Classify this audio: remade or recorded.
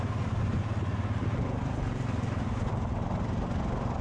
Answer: recorded